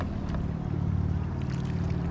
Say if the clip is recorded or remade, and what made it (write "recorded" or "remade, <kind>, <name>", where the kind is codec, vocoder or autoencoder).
recorded